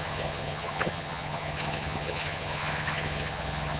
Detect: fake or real fake